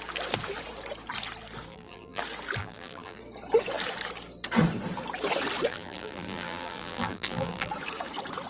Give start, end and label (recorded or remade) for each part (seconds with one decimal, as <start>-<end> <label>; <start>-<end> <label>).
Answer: 0.0-1.7 recorded; 1.7-2.2 remade; 2.2-2.6 recorded; 2.6-3.2 remade; 3.2-5.7 recorded; 5.7-7.7 remade; 7.7-8.5 recorded

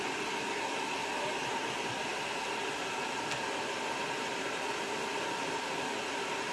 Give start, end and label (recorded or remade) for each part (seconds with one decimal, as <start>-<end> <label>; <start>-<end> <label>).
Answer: 0.0-6.5 recorded

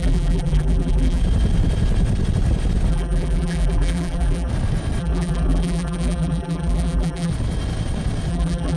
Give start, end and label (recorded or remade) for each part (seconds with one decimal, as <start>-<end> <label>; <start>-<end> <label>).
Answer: 0.0-1.2 remade; 1.2-2.9 recorded; 2.9-4.5 remade; 4.5-5.0 recorded; 5.0-7.3 remade; 7.3-8.3 recorded; 8.3-8.8 remade

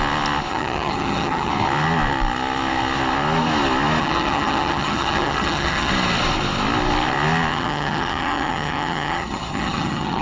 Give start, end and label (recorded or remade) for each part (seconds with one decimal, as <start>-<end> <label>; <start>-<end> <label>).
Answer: 0.0-0.5 recorded; 0.5-1.5 remade; 1.5-4.0 recorded; 4.0-5.9 remade; 5.9-7.5 recorded; 7.5-10.2 remade

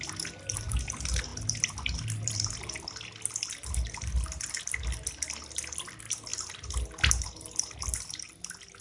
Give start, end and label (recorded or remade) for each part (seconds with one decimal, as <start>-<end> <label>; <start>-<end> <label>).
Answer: 0.0-8.8 recorded